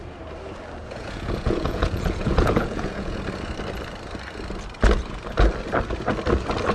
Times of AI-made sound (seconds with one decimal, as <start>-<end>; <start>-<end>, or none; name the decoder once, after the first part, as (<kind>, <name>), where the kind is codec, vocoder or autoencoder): 0.8-3.2 (vocoder, Vocos)